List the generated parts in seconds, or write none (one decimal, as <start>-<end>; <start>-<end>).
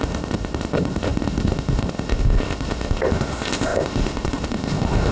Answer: 0.0-5.1